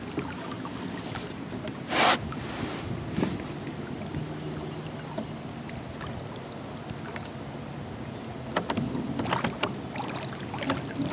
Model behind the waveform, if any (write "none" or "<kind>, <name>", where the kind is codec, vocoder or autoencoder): none